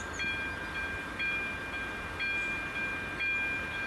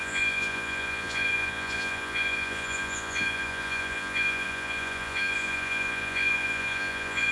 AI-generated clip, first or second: second